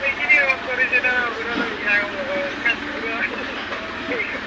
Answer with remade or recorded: recorded